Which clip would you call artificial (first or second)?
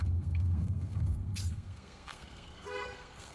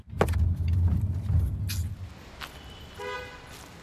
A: first